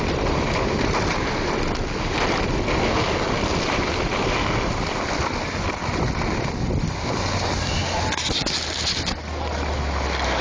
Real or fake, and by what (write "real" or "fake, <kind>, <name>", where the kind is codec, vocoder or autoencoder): real